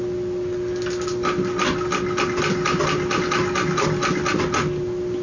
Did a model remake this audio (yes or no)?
no